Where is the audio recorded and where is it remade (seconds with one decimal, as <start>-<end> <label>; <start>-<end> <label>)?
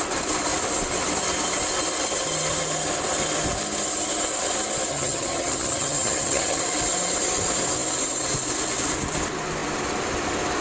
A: 0.0-4.9 recorded; 4.9-6.6 remade; 6.6-10.6 recorded